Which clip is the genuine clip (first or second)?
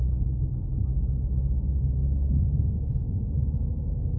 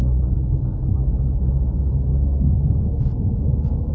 first